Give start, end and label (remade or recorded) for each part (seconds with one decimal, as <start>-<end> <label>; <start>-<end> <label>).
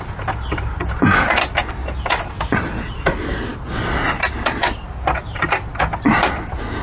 0.0-6.8 remade